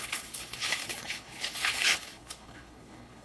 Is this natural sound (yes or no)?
no